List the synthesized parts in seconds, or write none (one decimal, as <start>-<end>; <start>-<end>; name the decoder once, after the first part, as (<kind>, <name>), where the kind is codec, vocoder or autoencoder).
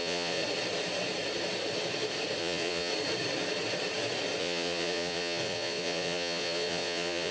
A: 0.0-0.4 (vocoder, Vocos); 2.4-2.9; 4.4-7.3